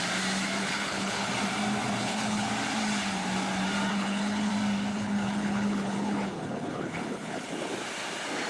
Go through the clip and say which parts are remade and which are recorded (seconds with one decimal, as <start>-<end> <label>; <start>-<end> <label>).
0.0-0.6 recorded; 0.6-1.3 remade; 1.3-2.0 recorded; 2.0-2.5 remade; 2.5-3.9 recorded; 3.9-4.5 remade; 4.5-4.9 recorded; 4.9-7.7 remade; 7.7-8.5 recorded